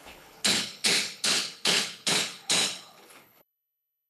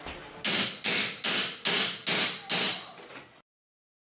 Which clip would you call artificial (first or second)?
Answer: first